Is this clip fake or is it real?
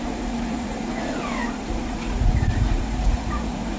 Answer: fake